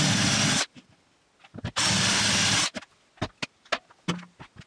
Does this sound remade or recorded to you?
recorded